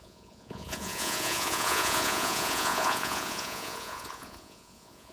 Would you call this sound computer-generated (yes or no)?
yes